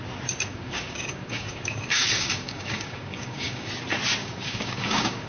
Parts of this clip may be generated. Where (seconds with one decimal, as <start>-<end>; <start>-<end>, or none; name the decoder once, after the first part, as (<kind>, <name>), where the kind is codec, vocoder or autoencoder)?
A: 0.5-3.7 (codec, DAC); 4.2-5.3